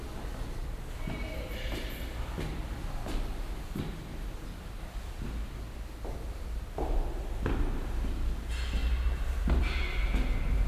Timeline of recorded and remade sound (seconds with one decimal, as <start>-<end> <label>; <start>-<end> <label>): 0.0-10.7 recorded